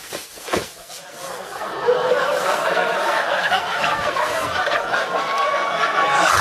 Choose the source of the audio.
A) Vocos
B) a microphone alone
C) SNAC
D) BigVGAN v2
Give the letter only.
C